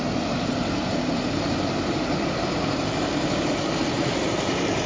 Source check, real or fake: fake